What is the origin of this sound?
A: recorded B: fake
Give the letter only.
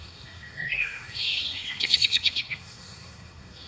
B